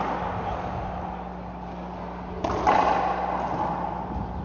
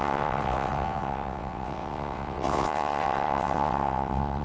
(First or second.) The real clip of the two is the first